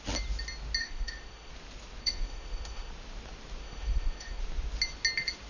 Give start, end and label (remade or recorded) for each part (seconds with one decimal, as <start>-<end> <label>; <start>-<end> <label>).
0.0-0.8 recorded; 0.8-1.5 remade; 1.5-2.0 recorded; 2.0-2.9 remade; 2.9-3.6 recorded; 3.6-4.4 remade; 4.4-5.5 recorded